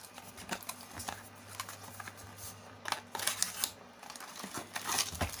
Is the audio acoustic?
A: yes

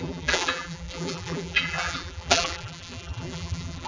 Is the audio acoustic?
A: no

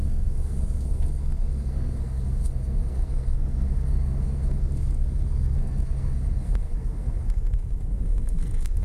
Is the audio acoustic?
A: no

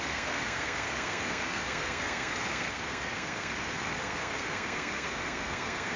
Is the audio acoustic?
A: no